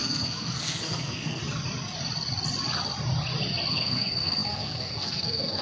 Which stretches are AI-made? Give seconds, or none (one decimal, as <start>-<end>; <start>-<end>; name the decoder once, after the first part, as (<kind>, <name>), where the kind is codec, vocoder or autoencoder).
0.0-1.4 (codec, SNAC); 3.7-5.6